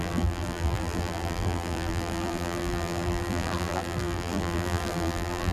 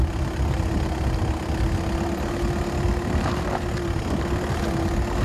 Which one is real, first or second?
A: second